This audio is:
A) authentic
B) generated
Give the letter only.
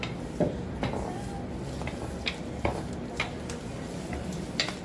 A